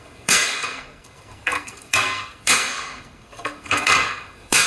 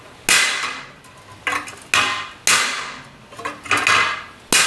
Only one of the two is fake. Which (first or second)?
first